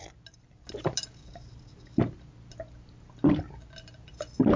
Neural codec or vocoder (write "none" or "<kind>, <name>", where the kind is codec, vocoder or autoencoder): none